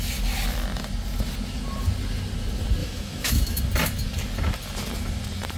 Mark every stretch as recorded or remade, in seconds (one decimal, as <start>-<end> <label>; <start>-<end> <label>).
0.0-2.8 recorded; 2.8-3.6 remade; 3.6-5.6 recorded